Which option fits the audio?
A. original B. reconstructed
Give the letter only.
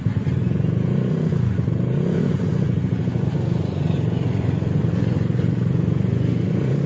B